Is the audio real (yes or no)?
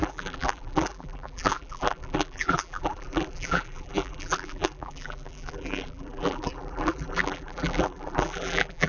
no